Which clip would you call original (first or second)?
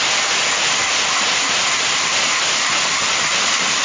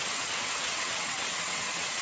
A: first